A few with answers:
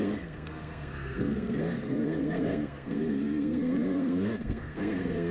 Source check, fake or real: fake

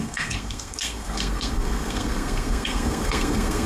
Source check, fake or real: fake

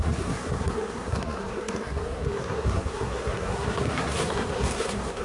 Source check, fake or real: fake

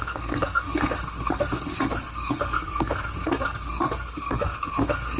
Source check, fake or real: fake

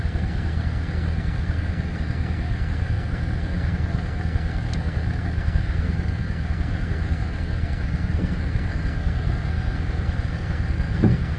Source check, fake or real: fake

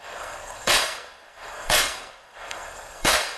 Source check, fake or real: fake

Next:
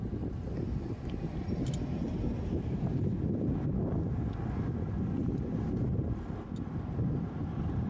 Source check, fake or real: real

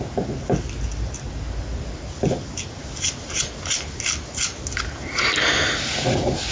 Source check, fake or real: real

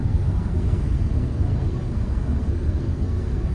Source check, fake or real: fake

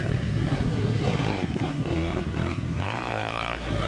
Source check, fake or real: fake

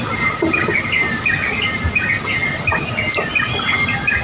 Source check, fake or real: real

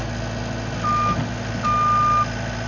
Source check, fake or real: real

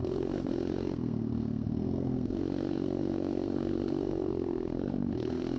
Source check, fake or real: fake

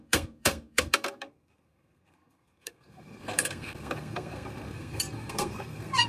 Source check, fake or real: fake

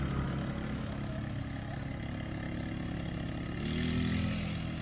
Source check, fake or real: real